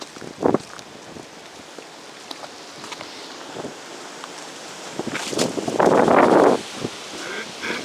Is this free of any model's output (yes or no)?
yes